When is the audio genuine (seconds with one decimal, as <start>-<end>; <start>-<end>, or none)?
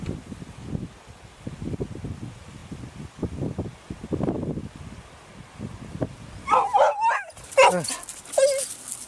0.0-9.1